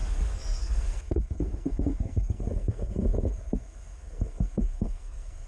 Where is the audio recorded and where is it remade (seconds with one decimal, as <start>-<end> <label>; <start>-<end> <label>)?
0.0-5.5 remade